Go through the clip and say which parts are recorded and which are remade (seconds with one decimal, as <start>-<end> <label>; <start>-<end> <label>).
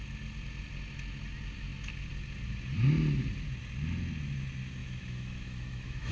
0.0-4.8 recorded; 4.8-6.1 remade